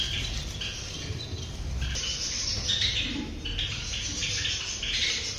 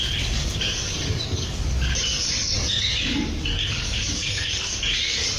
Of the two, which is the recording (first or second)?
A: first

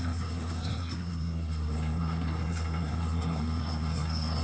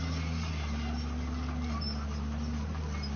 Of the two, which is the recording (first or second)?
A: second